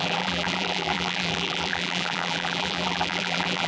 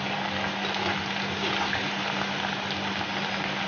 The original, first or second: second